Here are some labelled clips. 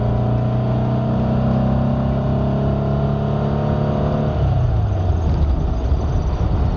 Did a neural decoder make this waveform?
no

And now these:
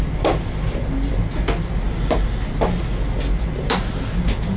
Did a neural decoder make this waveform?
no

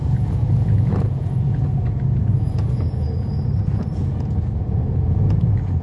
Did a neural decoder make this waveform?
yes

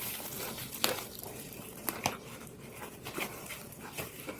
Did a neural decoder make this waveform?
yes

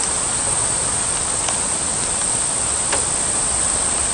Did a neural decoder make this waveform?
no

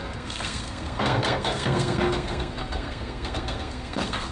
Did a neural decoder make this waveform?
yes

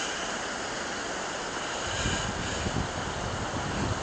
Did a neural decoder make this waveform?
no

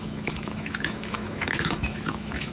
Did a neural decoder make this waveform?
yes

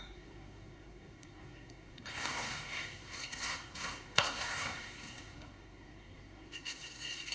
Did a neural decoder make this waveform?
yes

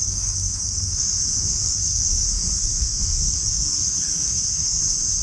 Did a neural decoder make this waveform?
yes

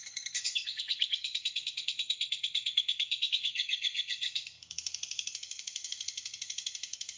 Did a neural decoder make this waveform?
yes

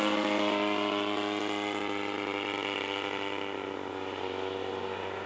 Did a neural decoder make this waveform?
no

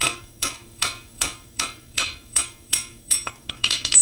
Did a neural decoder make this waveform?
yes